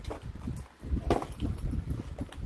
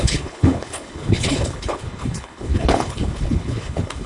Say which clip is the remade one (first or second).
second